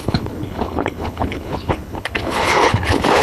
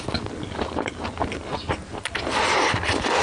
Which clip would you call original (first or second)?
second